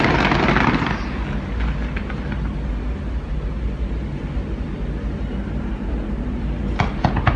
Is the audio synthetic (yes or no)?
no